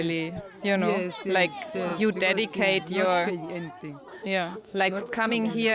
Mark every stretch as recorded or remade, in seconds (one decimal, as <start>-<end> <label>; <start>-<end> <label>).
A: 0.0-4.1 recorded; 4.1-5.3 remade; 5.3-5.7 recorded